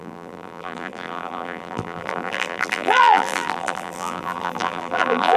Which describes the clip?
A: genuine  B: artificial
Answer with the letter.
B